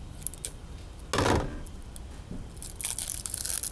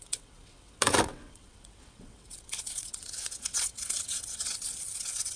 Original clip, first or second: first